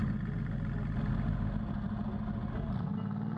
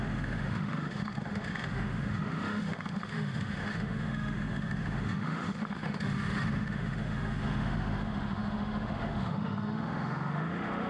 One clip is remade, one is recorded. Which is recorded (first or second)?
first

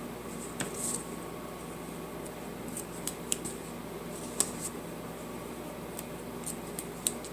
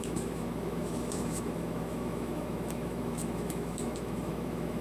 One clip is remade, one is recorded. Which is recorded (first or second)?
first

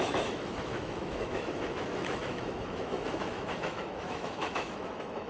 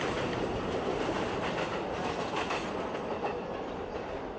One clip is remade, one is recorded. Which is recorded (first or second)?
second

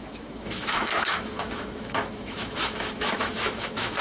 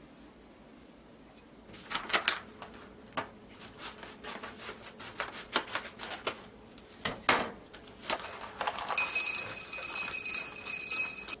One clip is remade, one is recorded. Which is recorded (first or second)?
second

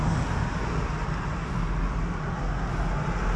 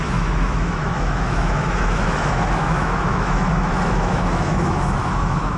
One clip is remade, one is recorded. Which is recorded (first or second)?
first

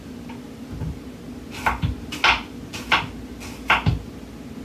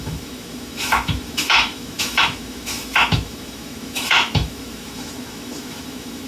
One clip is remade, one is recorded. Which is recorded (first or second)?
first